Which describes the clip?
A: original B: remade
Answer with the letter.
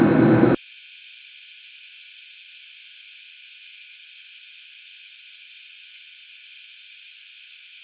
A